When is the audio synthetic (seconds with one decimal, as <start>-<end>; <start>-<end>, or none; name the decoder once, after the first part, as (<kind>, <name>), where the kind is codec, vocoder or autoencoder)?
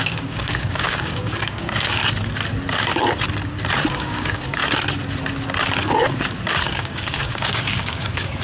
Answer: 0.0-2.0 (codec, DAC); 3.9-4.6; 6.6-8.4